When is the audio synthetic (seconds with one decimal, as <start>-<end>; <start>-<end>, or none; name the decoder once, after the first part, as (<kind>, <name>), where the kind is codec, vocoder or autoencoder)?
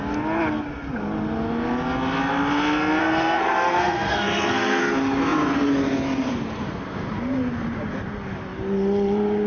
3.0-4.8 (codec, SNAC)